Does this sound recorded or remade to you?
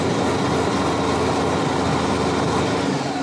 recorded